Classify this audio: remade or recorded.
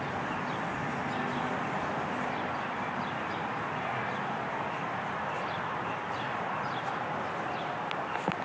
recorded